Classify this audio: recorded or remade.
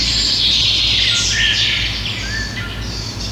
recorded